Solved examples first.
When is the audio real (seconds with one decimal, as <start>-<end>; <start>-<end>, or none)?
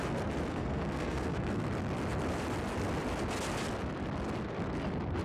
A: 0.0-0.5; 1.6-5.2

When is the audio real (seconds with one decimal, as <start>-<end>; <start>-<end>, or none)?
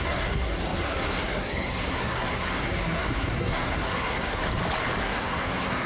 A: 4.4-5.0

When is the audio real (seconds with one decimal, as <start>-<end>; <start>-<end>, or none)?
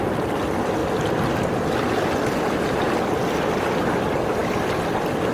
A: 0.0-5.3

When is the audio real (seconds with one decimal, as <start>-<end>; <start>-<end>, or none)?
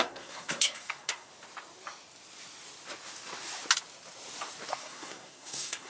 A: 1.3-4.7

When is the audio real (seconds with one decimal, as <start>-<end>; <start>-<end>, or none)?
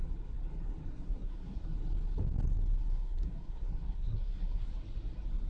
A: 0.0-0.9; 1.6-2.9; 4.7-5.5